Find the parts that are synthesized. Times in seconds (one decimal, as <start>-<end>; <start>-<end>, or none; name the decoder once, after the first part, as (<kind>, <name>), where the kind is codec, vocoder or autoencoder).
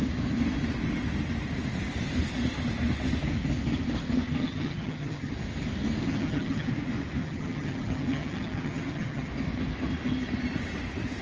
4.4-5.3 (vocoder, HiFi-GAN); 6.0-6.7; 7.2-9.3